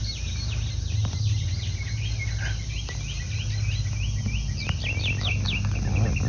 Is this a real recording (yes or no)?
yes